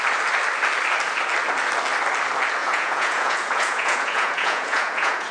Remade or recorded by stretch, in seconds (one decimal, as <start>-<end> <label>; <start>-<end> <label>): 0.0-2.6 recorded; 2.6-5.3 remade